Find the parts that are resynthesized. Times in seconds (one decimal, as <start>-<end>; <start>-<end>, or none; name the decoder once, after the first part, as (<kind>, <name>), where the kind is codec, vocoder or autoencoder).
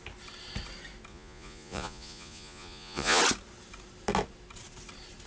1.1-3.2 (vocoder, Vocos)